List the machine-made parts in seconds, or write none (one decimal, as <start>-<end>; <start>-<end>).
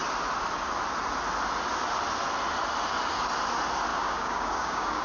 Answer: 3.9-5.0